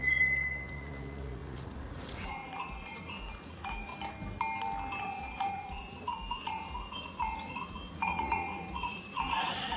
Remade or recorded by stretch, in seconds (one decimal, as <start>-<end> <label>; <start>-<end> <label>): 0.0-3.9 remade; 3.9-5.0 recorded; 5.0-9.8 remade